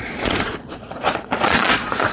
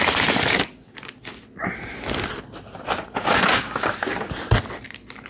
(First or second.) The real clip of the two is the second